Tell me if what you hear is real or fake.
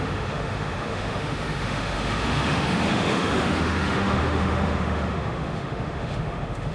fake